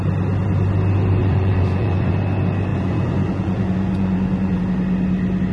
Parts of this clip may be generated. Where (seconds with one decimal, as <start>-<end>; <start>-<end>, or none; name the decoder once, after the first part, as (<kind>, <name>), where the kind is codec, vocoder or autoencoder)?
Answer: 1.2-2.1 (vocoder, Vocos); 2.7-4.6